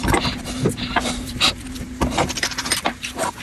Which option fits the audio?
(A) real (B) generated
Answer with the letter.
B